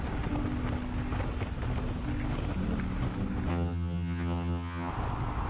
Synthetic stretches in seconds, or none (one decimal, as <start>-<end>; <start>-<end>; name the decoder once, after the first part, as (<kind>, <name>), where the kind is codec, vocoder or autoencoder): 3.5-4.9 (vocoder, HiFi-GAN)